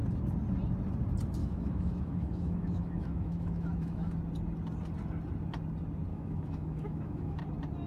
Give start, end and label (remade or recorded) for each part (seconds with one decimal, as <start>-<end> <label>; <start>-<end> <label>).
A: 0.0-1.4 recorded; 1.4-4.1 remade; 4.1-6.1 recorded; 6.1-7.4 remade; 7.4-7.9 recorded